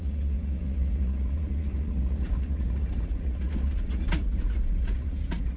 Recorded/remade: remade